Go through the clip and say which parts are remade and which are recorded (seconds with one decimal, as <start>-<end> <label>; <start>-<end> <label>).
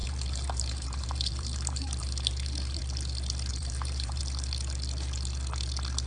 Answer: 0.0-2.8 remade; 2.8-3.5 recorded; 3.5-4.2 remade; 4.2-6.1 recorded